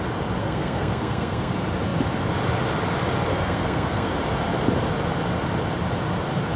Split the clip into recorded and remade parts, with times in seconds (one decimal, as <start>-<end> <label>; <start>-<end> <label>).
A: 0.0-0.4 recorded; 0.4-1.5 remade; 1.5-3.3 recorded; 3.3-4.1 remade; 4.1-6.6 recorded